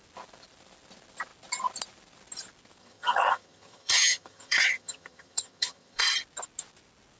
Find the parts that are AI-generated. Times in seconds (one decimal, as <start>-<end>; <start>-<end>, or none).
2.8-6.0